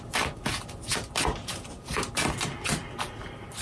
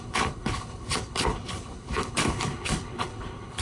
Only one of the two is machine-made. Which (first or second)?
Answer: second